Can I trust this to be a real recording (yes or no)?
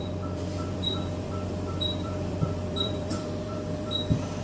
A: no